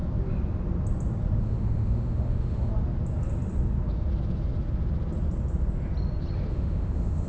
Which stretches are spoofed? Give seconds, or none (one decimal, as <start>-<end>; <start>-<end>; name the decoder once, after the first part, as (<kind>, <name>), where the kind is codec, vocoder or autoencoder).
1.4-2.7 (autoencoder, DAC-VAE); 6.5-7.3